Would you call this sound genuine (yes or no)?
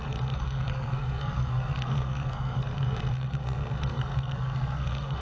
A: no